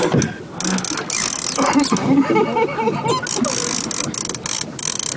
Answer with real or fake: real